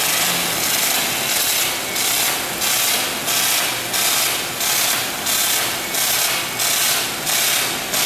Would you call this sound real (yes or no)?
yes